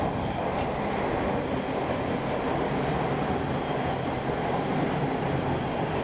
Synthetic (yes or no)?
no